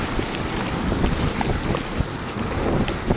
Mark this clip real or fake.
real